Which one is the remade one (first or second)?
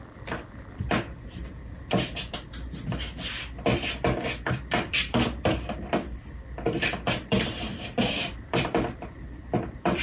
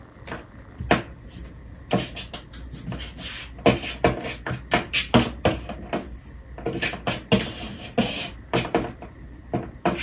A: first